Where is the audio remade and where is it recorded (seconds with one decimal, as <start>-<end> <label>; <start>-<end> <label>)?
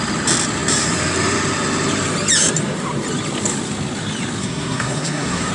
0.0-4.4 recorded; 4.4-5.5 remade